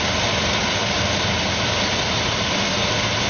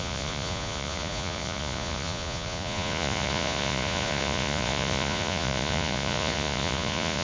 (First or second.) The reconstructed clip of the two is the second